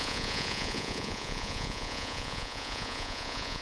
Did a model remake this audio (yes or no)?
yes